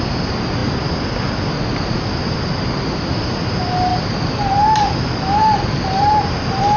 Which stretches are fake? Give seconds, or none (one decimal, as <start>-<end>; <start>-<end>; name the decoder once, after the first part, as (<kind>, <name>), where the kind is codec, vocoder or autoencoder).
3.9-6.8 (vocoder, BigVGAN v2)